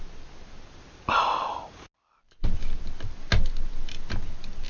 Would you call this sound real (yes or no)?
yes